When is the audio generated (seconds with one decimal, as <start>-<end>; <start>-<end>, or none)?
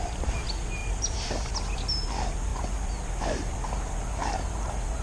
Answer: 0.8-1.3